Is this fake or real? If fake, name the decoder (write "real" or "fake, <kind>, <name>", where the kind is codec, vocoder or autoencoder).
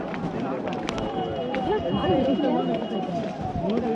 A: real